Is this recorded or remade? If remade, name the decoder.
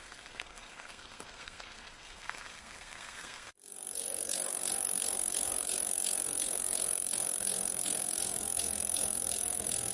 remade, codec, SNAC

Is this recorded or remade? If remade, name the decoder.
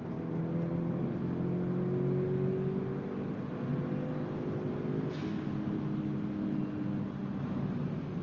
recorded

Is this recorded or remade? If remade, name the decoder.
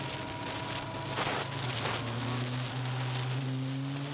recorded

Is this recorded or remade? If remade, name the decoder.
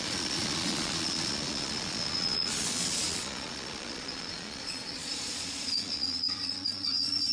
remade, vocoder, Vocos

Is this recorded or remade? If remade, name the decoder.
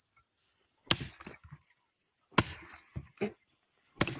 recorded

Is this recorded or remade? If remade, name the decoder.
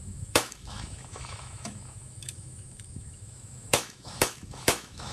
remade, autoencoder, DAC-VAE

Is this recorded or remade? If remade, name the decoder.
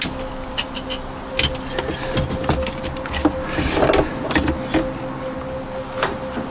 recorded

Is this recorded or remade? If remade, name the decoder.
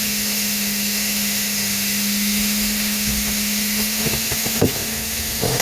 remade, autoencoder, DAC-VAE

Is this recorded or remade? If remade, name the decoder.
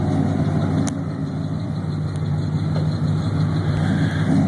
recorded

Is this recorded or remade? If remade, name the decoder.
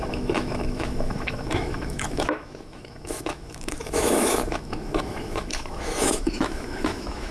remade, autoencoder, DAC-VAE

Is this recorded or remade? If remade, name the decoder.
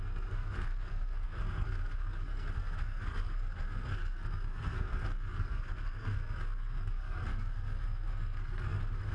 remade, codec, SNAC